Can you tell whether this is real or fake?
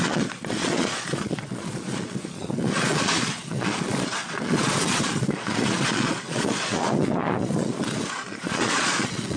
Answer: fake